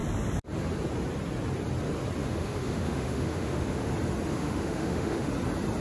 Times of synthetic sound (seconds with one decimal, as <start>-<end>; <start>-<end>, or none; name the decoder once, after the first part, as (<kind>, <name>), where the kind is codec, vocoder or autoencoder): 2.2-3.9 (autoencoder, DAC-VAE); 4.3-5.3